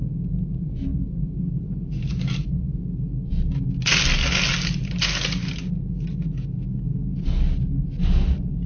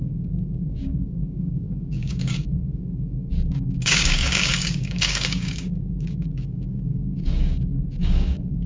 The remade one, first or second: second